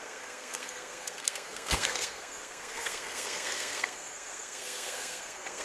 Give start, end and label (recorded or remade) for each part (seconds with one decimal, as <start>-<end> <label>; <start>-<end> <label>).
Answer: 0.0-5.6 remade